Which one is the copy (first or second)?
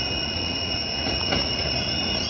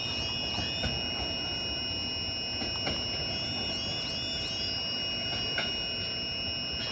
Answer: first